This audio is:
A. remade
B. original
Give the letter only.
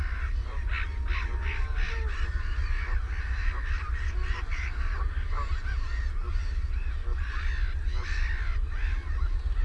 B